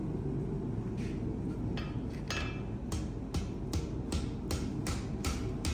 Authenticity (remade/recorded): recorded